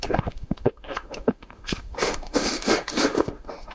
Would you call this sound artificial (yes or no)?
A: yes